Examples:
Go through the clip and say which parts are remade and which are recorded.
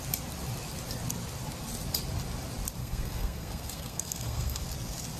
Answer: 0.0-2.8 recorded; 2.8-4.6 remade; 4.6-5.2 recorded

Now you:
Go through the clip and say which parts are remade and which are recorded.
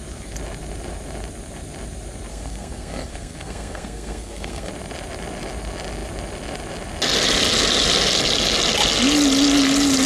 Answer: 0.0-2.3 recorded; 2.3-4.7 remade; 4.7-10.1 recorded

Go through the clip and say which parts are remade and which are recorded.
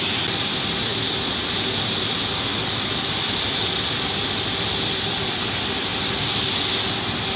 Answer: 0.0-7.4 recorded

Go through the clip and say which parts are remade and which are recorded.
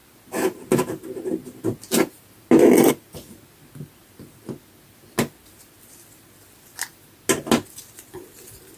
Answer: 0.0-8.8 recorded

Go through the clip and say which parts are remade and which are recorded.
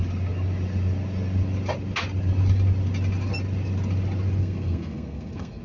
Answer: 0.0-4.4 recorded; 4.4-5.6 remade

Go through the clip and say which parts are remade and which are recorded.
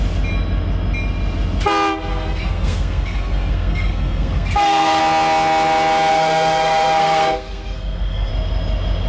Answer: 0.0-2.1 recorded; 2.1-5.0 remade; 5.0-6.1 recorded; 6.1-8.3 remade; 8.3-9.1 recorded